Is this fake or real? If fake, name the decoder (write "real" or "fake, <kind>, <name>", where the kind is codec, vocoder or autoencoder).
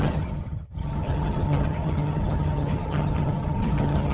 fake, vocoder, HiFi-GAN